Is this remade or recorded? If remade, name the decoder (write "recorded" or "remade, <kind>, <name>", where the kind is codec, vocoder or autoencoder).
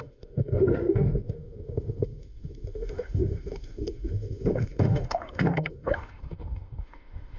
remade, autoencoder, DAC-VAE